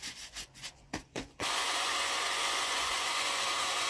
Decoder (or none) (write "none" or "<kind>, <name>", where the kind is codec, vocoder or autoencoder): vocoder, Vocos